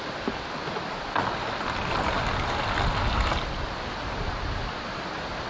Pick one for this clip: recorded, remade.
recorded